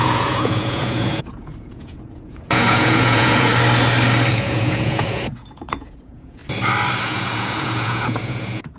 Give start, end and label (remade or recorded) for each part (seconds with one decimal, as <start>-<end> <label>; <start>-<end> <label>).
0.0-3.5 remade; 3.5-4.3 recorded; 4.3-6.4 remade; 6.4-7.0 recorded; 7.0-8.8 remade

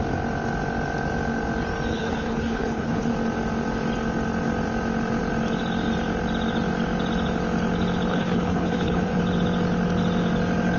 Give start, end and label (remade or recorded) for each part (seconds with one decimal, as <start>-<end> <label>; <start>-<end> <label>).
0.0-1.9 recorded; 1.9-3.1 remade; 3.1-8.1 recorded; 8.1-9.2 remade; 9.2-10.8 recorded

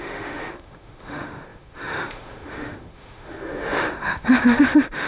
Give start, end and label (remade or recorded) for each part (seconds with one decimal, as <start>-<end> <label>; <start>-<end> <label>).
0.0-5.1 remade